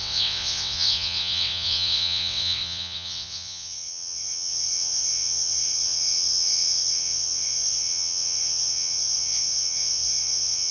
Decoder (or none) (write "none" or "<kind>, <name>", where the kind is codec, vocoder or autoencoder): vocoder, WaveNeXt